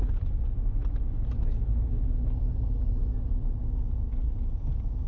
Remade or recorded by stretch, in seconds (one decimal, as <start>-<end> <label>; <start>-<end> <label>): 0.0-5.1 recorded